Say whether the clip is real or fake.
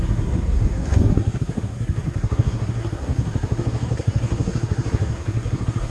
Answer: fake